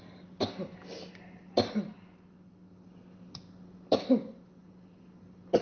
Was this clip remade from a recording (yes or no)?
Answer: no